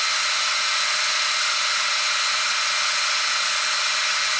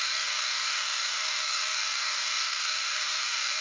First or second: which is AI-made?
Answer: second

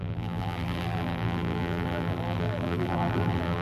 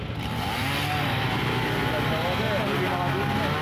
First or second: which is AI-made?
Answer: first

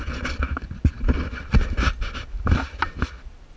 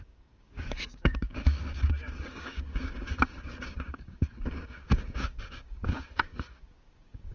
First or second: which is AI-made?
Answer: second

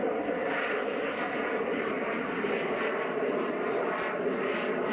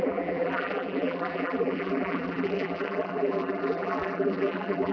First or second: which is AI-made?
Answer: second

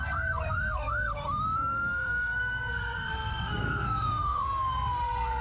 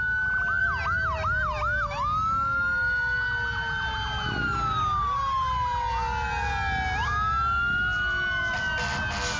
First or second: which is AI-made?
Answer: first